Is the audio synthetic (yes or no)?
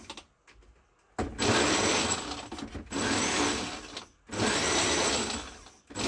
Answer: no